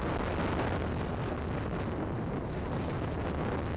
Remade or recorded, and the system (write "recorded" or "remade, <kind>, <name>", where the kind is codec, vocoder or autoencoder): recorded